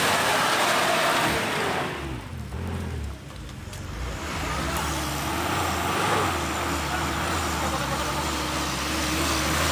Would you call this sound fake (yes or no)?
no